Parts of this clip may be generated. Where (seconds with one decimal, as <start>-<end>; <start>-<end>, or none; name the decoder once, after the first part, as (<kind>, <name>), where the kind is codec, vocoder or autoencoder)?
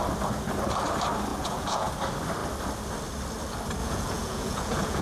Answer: 1.3-1.9 (vocoder, Vocos); 3.8-5.0